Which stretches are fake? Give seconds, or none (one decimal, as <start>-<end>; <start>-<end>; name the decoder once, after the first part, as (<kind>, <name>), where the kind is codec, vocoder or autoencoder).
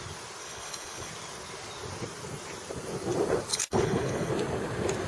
0.4-1.1 (codec, HILCodec); 3.5-4.3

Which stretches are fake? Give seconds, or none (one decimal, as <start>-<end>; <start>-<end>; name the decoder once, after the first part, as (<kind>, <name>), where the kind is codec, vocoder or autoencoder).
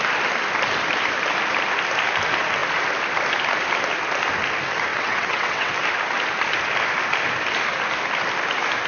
4.9-5.7 (vocoder, WaveNeXt)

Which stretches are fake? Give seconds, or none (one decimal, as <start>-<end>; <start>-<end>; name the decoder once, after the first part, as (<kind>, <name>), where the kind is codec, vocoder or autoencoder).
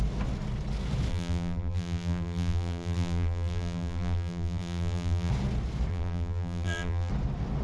1.1-5.3 (vocoder, BigVGAN v2); 5.9-7.1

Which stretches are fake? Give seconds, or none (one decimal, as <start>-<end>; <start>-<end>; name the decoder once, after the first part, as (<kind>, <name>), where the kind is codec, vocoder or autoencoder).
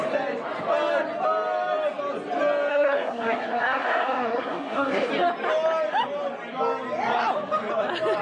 2.7-5.1 (codec, SNAC)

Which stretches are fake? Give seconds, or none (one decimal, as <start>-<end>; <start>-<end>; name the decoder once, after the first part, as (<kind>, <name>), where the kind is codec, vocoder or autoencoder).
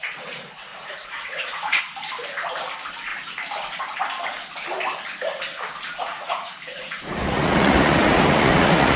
0.7-1.8 (vocoder, Vocos); 6.0-9.0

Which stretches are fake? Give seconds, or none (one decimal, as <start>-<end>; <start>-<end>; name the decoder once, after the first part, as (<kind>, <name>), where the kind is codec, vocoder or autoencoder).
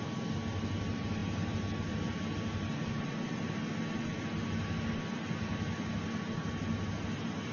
1.2-2.3 (vocoder, BigVGAN v2)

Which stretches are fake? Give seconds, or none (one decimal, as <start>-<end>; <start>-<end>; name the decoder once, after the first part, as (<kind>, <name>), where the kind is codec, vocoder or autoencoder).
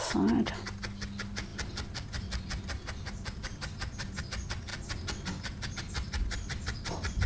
none